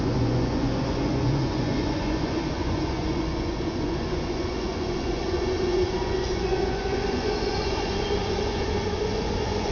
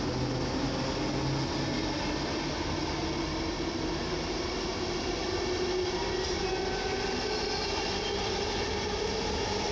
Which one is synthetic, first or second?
first